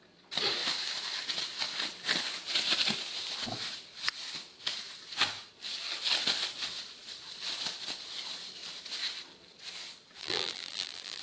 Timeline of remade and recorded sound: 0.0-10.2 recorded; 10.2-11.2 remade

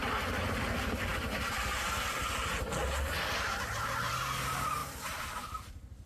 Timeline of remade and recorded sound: 0.0-4.8 recorded; 4.8-5.4 remade; 5.4-6.1 recorded

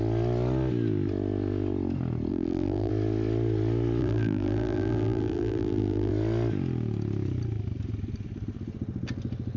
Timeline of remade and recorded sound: 0.0-2.3 recorded; 2.3-2.9 remade; 2.9-4.0 recorded; 4.0-6.1 remade; 6.1-9.6 recorded

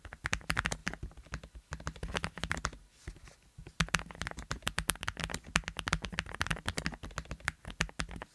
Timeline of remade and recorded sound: 0.0-8.3 recorded